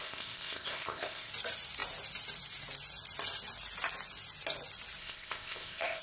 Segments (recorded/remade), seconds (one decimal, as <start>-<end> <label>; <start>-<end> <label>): 0.0-1.3 remade; 1.3-5.0 recorded; 5.0-6.0 remade